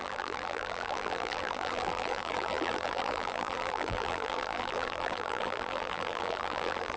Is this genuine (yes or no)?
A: no